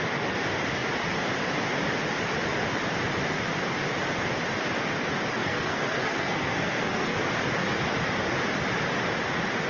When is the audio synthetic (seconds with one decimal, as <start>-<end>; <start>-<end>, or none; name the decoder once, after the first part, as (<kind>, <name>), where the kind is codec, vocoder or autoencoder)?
5.4-7.2 (codec, SNAC)